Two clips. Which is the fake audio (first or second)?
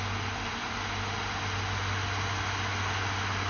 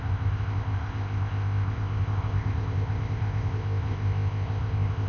second